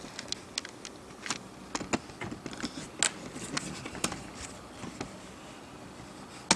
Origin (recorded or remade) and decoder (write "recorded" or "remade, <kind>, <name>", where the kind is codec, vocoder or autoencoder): recorded